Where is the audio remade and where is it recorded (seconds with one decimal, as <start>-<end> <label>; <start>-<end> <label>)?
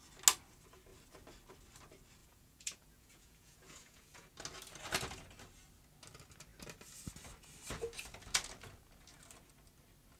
0.0-2.2 recorded; 2.2-4.3 remade; 4.3-10.2 recorded